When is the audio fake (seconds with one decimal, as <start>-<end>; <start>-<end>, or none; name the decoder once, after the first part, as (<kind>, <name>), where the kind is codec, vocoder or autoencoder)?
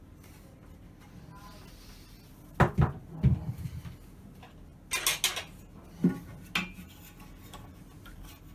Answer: none